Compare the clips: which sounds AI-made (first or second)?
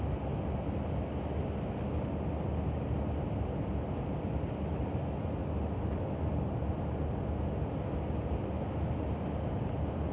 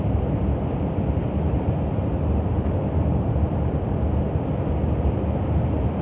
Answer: second